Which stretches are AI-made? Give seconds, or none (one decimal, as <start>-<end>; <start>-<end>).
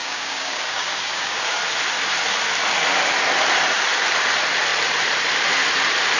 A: 0.0-1.6